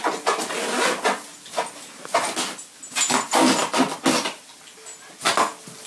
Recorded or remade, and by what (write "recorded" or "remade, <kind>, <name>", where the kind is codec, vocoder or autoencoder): recorded